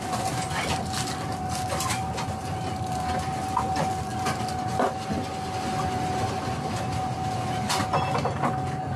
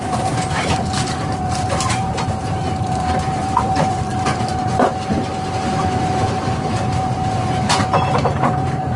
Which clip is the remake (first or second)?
second